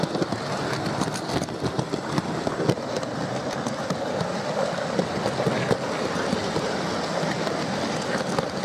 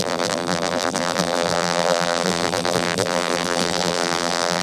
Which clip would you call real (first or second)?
first